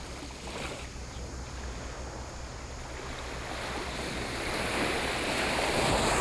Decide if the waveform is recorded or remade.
recorded